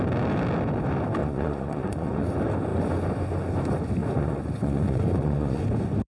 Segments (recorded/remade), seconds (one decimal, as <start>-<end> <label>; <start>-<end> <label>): 0.0-1.2 recorded; 1.2-2.3 remade; 2.3-4.0 recorded; 4.0-5.6 remade; 5.6-6.1 recorded